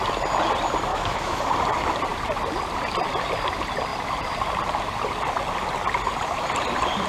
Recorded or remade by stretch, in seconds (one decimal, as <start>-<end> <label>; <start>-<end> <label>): 0.0-0.9 recorded; 0.9-1.4 remade; 1.4-7.1 recorded